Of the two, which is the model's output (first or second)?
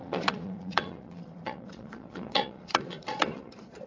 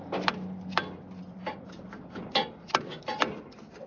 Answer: first